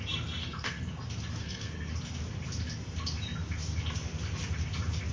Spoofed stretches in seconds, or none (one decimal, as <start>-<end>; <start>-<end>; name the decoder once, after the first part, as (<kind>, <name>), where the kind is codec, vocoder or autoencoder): 0.4-0.9 (codec, SNAC); 1.4-1.9